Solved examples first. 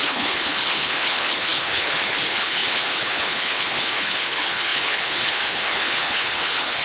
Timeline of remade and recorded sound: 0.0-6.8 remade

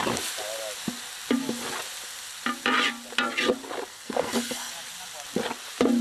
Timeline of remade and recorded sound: 0.0-3.9 recorded; 3.9-4.7 remade; 4.7-6.0 recorded

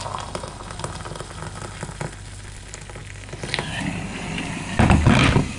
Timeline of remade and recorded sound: 0.0-5.6 recorded

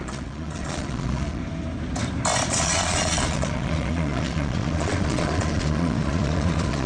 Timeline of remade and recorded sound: 0.0-1.4 remade; 1.4-2.5 recorded; 2.5-6.9 remade

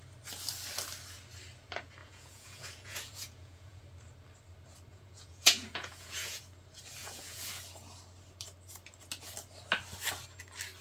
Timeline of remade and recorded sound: 0.0-2.0 recorded; 2.0-3.8 remade; 3.8-4.9 recorded; 4.9-6.4 remade; 6.4-7.0 recorded; 7.0-7.5 remade; 7.5-10.8 recorded

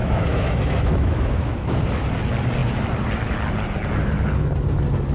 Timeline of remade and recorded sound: 0.0-1.8 remade; 1.8-5.1 recorded

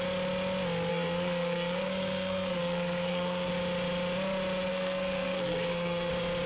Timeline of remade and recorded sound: 0.0-0.9 recorded; 0.9-3.5 remade; 3.5-4.7 recorded; 4.7-6.1 remade; 6.1-6.5 recorded

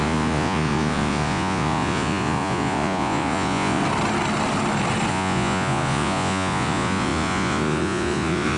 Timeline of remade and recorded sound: 0.0-3.8 remade; 3.8-5.1 recorded; 5.1-8.6 remade